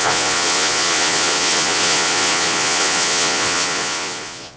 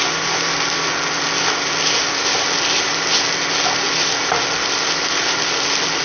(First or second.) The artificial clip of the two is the first